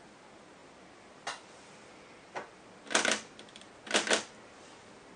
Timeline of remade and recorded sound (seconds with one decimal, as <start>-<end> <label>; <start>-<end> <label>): 0.0-5.2 recorded